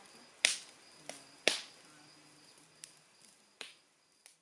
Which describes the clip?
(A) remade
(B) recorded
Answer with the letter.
B